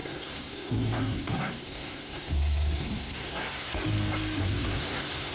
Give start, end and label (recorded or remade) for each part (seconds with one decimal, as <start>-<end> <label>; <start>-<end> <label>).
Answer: 0.0-3.7 remade; 3.7-4.4 recorded; 4.4-5.3 remade